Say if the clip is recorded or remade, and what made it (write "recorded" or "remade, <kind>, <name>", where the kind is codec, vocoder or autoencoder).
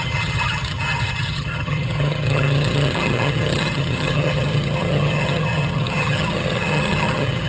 remade, vocoder, HiFi-GAN